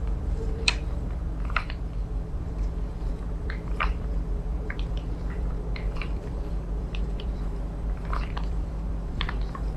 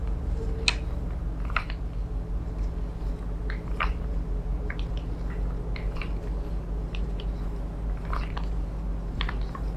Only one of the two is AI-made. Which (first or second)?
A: first